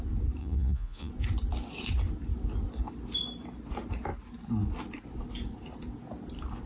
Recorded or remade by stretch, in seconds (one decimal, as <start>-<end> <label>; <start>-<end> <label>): 0.0-0.4 recorded; 0.4-1.1 remade; 1.1-6.7 recorded